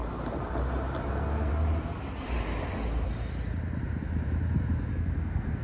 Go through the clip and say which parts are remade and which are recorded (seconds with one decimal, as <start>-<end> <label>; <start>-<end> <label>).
0.0-1.1 recorded; 1.1-1.5 remade; 1.5-4.9 recorded; 4.9-5.6 remade